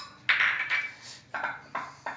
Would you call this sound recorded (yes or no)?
yes